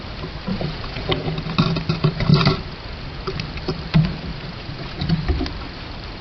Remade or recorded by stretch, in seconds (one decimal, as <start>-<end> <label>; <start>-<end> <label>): 0.0-0.5 recorded; 0.5-1.1 remade; 1.1-4.3 recorded; 4.3-5.2 remade; 5.2-6.2 recorded